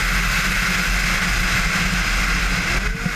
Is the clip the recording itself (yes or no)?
yes